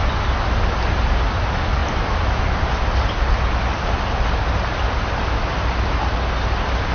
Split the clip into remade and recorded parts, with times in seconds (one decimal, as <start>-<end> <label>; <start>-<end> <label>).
0.0-6.9 recorded